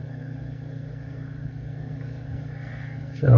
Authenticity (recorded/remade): remade